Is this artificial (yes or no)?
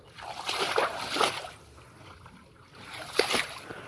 no